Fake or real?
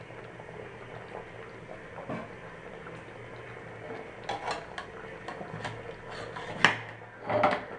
real